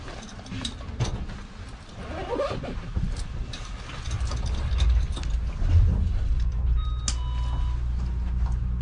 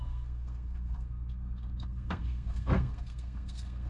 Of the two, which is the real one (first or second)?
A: first